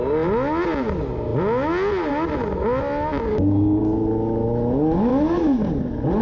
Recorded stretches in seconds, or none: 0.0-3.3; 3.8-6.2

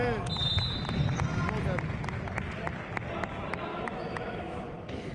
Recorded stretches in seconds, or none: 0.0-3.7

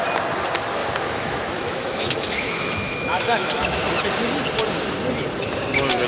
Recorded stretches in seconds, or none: 0.0-0.8; 3.8-6.1

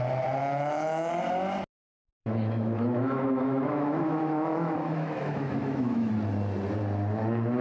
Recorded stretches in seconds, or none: 0.0-0.4; 1.1-2.2; 6.1-7.6

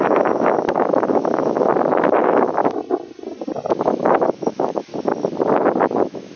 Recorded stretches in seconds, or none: 1.7-2.2; 2.6-3.8; 4.9-6.0